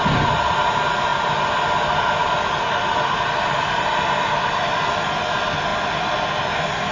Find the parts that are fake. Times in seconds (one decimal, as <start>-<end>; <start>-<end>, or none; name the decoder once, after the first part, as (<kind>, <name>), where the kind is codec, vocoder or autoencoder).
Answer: none